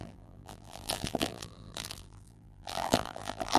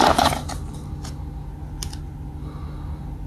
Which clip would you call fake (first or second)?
first